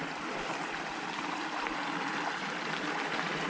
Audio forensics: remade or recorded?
recorded